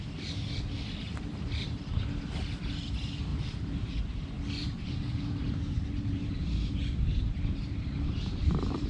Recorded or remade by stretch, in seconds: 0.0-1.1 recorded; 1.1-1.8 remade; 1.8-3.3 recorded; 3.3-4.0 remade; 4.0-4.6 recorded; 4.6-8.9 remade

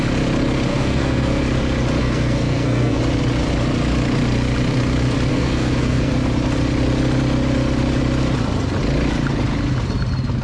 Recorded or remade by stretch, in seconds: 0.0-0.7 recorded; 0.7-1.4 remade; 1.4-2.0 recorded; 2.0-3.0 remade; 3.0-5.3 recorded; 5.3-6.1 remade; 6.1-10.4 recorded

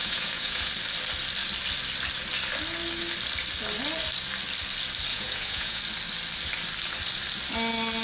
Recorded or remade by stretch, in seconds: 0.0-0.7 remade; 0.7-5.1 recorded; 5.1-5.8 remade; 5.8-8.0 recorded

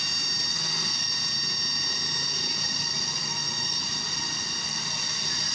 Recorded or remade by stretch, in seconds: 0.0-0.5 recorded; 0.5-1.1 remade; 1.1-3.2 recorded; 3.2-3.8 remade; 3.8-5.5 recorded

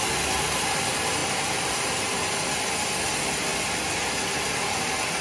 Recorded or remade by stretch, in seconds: 0.0-1.2 recorded; 1.2-2.0 remade; 2.0-5.2 recorded